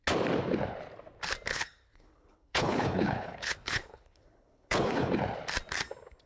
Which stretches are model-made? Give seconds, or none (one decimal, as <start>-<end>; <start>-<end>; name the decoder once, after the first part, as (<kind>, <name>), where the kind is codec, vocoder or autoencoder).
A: 1.5-5.1 (codec, HILCodec)